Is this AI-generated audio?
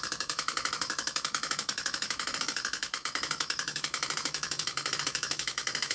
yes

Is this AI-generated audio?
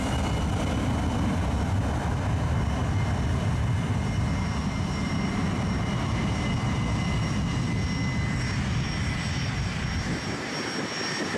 no